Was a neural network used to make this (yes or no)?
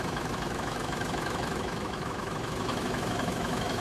yes